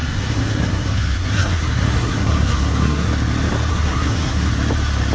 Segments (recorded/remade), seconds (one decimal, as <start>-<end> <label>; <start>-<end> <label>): 0.0-3.1 remade; 3.1-3.7 recorded; 3.7-4.5 remade; 4.5-5.1 recorded